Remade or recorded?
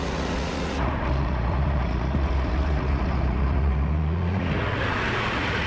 remade